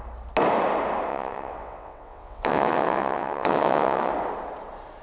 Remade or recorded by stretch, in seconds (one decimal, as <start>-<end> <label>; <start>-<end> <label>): 0.0-1.1 recorded; 1.1-4.1 remade; 4.1-5.0 recorded